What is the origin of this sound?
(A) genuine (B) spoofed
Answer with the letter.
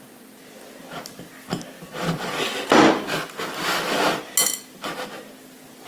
A